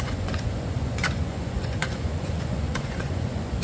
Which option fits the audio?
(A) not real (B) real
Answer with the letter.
A